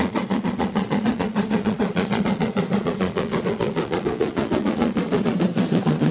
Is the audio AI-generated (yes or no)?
yes